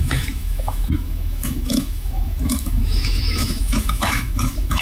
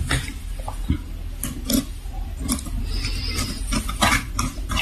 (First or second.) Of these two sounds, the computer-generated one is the first